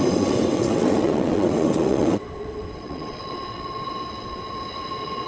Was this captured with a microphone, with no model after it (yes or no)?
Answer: no